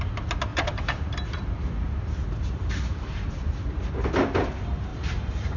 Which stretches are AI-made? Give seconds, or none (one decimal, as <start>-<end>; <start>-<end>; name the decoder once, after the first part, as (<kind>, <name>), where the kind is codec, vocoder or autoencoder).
0.5-3.9 (vocoder, BigVGAN v2); 4.9-5.6